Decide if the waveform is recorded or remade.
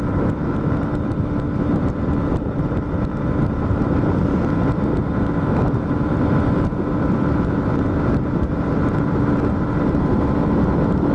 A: remade